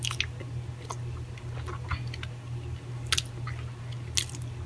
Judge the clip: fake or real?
real